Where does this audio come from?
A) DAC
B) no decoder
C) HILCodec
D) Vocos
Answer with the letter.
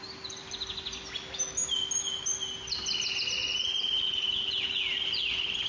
B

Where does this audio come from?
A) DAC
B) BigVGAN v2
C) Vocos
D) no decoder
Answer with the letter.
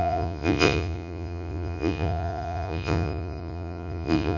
C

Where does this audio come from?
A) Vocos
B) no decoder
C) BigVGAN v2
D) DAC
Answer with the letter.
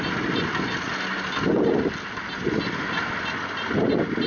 B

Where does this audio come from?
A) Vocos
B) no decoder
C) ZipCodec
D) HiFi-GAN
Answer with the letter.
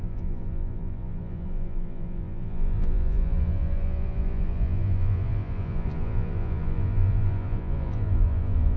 A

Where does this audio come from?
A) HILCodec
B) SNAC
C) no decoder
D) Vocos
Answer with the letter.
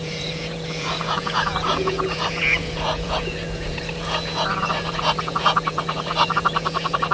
D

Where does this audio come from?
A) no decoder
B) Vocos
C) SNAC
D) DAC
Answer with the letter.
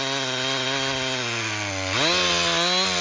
A